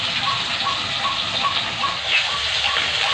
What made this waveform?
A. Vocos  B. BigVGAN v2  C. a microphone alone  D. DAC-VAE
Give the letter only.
C